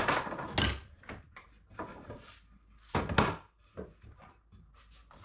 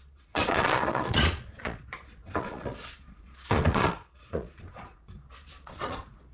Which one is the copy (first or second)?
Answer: second